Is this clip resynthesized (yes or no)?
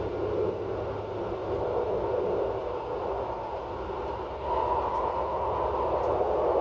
no